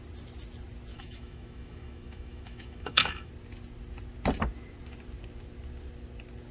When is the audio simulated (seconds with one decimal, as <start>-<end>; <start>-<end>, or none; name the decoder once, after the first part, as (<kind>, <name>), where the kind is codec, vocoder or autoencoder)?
0.9-3.3 (autoencoder, DAC-VAE)